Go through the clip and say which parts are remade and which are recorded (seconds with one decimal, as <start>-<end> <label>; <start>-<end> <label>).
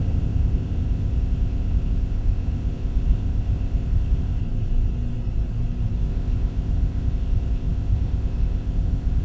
0.0-4.4 remade; 4.4-6.0 recorded; 6.0-9.2 remade